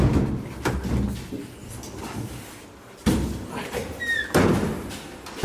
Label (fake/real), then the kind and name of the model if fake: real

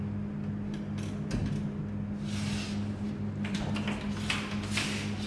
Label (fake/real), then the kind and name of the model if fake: real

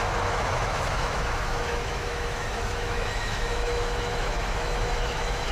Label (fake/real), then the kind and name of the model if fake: fake, autoencoder, DAC-VAE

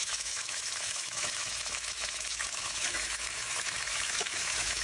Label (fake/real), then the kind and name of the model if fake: fake, autoencoder, DAC-VAE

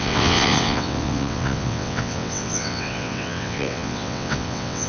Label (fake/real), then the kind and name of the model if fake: fake, vocoder, WaveNeXt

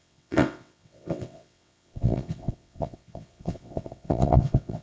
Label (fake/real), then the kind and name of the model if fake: fake, vocoder, WaveNeXt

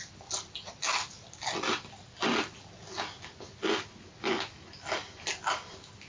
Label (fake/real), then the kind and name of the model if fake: real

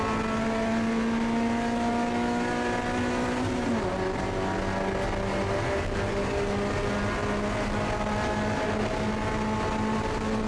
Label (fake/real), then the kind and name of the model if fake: real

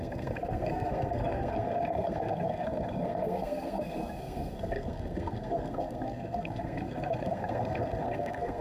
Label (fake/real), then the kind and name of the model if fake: fake, codec, SNAC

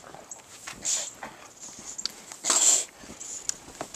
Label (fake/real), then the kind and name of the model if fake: real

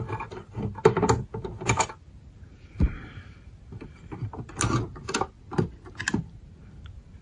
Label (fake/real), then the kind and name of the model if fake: real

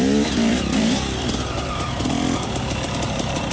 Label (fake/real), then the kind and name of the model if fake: fake, vocoder, BigVGAN v2